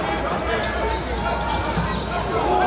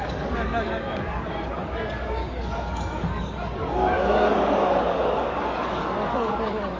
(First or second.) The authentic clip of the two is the first